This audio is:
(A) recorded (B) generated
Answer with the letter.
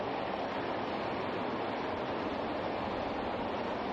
A